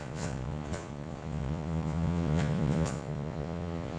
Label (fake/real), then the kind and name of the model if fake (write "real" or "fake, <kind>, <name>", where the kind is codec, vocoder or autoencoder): fake, vocoder, Vocos